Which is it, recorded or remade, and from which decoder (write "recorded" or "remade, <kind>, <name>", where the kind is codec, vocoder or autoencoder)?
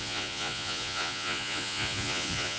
remade, vocoder, Vocos